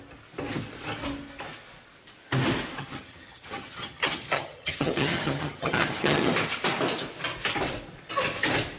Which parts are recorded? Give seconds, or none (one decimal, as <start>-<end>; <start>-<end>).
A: 0.0-2.8; 6.3-8.8